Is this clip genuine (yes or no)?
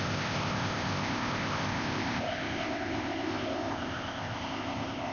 no